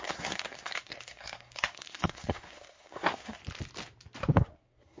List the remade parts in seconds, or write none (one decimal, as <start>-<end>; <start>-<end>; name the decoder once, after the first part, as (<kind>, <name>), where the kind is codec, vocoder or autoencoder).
0.0-3.4 (codec, SNAC); 4.4-5.0